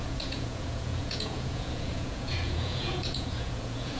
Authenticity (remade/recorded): remade